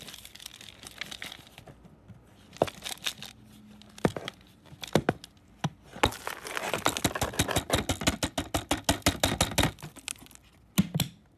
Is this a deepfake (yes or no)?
no